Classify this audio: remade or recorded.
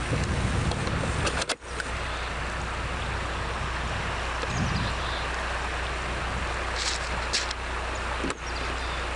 recorded